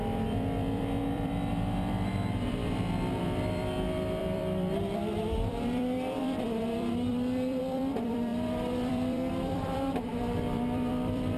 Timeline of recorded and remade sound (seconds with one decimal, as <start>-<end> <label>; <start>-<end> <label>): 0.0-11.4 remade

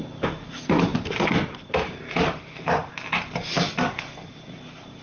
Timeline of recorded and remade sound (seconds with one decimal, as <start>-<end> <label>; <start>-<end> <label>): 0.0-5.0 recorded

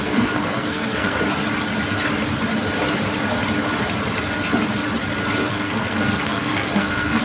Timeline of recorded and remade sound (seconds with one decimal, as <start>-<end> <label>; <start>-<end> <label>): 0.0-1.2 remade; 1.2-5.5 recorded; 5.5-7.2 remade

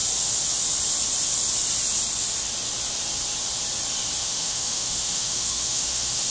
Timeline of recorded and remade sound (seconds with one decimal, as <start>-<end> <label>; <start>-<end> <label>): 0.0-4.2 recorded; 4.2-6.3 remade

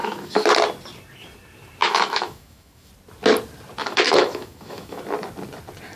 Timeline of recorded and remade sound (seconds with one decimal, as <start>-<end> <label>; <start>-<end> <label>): 0.0-0.5 remade; 0.5-1.8 recorded; 1.8-2.9 remade; 2.9-3.8 recorded; 3.8-5.0 remade; 5.0-6.0 recorded